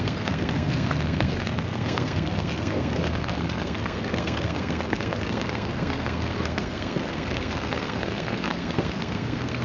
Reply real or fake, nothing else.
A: fake